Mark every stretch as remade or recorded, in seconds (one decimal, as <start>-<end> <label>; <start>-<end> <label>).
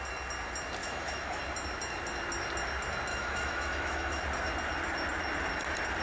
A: 0.0-0.8 recorded; 0.8-1.4 remade; 1.4-3.1 recorded; 3.1-4.2 remade; 4.2-6.0 recorded